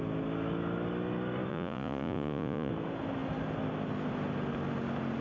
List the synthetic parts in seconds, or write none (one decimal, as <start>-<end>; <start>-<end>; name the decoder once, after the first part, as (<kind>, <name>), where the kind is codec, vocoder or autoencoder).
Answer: 1.5-2.7 (vocoder, Vocos)